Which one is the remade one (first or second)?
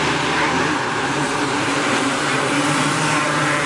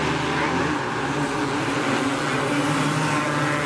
first